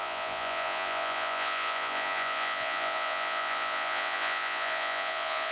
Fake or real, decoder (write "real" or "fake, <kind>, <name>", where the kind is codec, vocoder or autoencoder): fake, vocoder, Vocos